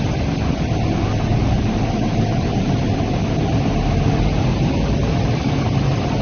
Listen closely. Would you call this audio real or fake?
real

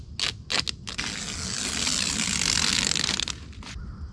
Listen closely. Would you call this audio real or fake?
real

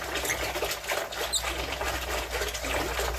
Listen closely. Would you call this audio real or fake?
real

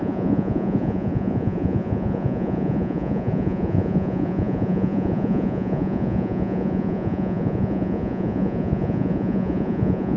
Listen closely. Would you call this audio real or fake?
fake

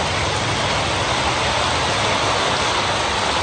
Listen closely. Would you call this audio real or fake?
real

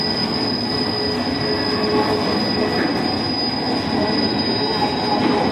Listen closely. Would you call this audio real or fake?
real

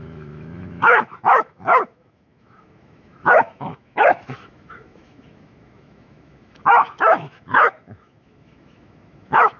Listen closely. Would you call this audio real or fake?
fake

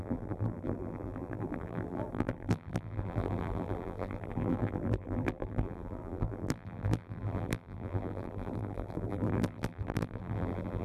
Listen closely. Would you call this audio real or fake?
fake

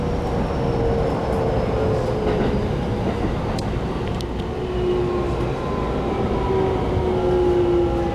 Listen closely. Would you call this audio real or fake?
real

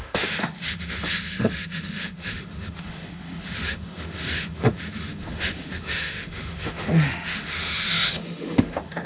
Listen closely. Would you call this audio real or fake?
fake